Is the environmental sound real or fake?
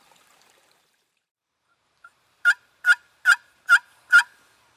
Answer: fake